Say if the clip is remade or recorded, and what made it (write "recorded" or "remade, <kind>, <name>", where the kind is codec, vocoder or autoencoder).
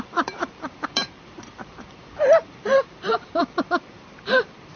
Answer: remade, vocoder, BigVGAN v2